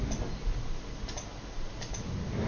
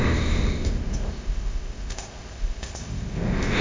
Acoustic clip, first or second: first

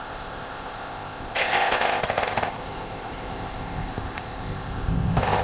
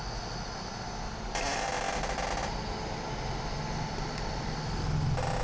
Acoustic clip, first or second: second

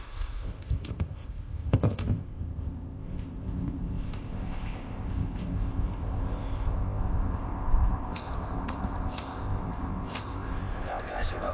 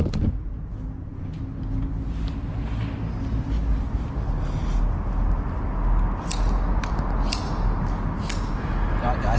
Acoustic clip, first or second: second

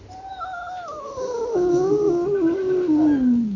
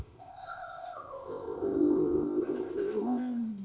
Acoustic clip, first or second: first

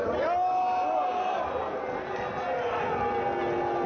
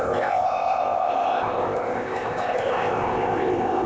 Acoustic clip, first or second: first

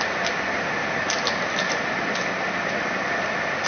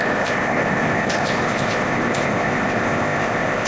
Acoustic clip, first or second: first